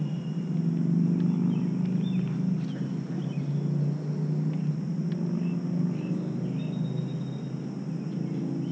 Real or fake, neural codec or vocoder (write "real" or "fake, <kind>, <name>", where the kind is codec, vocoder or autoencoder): real